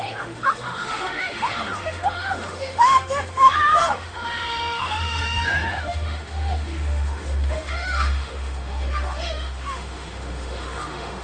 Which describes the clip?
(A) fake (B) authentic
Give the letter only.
A